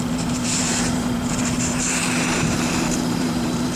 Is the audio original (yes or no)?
no